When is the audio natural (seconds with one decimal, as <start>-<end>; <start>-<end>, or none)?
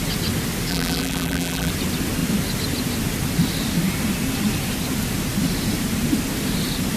0.0-0.7; 1.7-7.0